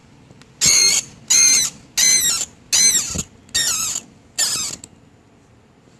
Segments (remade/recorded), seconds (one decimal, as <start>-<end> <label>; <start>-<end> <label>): 0.0-6.0 recorded